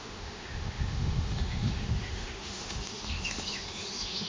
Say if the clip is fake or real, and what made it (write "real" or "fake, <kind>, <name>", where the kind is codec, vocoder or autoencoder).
fake, autoencoder, DAC-VAE